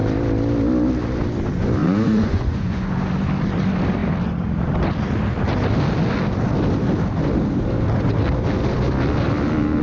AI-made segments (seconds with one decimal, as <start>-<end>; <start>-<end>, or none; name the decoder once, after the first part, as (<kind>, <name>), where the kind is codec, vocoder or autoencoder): 1.8-2.9 (vocoder, Vocos)